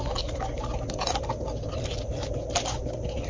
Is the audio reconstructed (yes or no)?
no